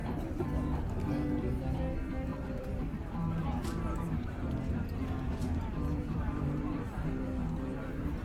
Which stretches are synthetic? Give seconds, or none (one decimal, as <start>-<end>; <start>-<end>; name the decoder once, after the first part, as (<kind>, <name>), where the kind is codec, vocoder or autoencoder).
0.0-0.8 (vocoder, BigVGAN v2); 2.3-4.4; 5.4-7.0